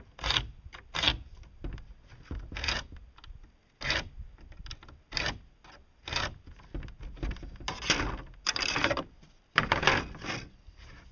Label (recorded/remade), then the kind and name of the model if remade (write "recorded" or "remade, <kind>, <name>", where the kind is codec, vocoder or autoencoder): recorded